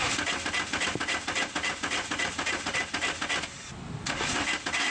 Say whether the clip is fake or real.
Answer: real